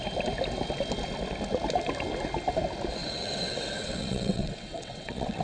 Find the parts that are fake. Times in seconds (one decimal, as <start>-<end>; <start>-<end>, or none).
3.0-5.4